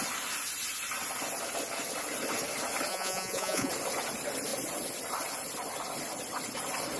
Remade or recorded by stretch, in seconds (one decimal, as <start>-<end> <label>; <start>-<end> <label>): 0.0-2.9 recorded; 2.9-3.7 remade; 3.7-7.0 recorded